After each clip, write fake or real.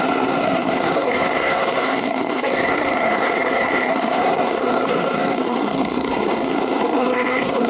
fake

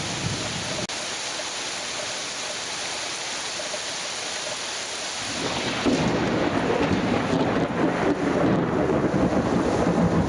real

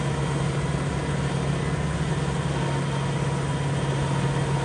real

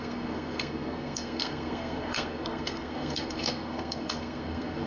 fake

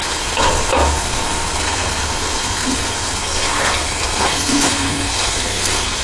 fake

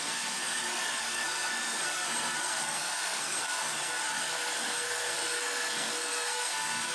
fake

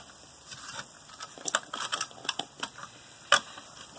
real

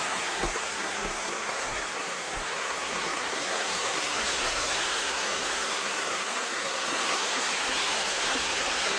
fake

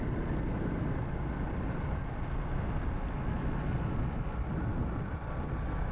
real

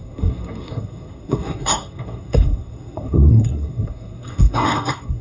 fake